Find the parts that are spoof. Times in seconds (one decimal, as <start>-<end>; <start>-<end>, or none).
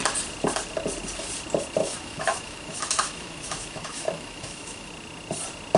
1.8-4.9